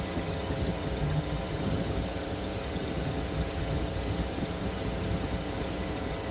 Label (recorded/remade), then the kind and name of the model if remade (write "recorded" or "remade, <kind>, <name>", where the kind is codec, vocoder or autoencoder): remade, vocoder, HiFi-GAN